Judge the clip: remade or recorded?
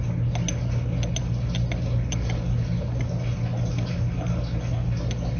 recorded